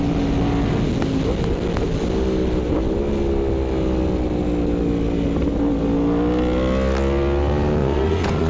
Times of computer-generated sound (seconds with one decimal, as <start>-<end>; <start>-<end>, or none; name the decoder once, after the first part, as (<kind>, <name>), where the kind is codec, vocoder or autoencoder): 7.8-8.5 (vocoder, Vocos)